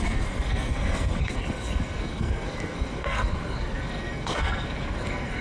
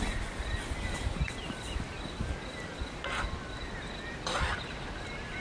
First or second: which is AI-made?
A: first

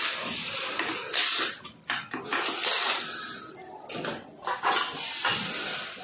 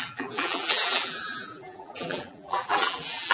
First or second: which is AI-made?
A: second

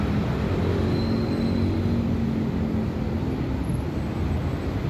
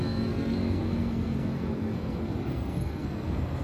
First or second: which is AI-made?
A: second